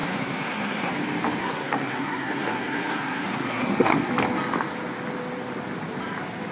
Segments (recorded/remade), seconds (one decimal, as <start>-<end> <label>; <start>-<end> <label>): 0.0-0.9 remade; 0.9-1.4 recorded; 1.4-4.1 remade; 4.1-6.5 recorded